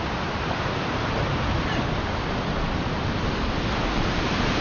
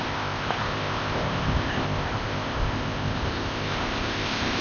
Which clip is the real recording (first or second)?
first